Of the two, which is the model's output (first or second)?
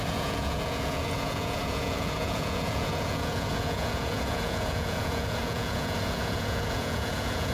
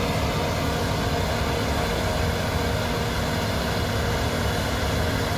first